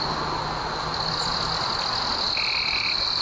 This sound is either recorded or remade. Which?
recorded